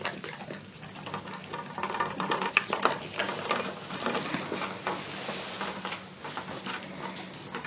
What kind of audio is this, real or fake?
real